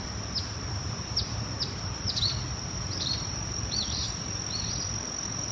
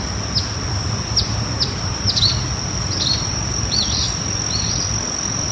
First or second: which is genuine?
second